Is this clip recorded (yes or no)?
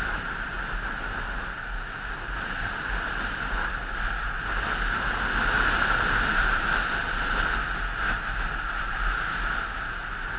yes